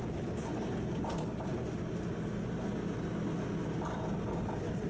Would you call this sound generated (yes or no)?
no